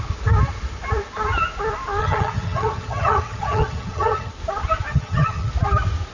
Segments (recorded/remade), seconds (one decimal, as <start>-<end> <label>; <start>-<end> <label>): 0.0-2.0 recorded; 2.0-4.3 remade; 4.3-4.9 recorded; 4.9-5.5 remade; 5.5-6.1 recorded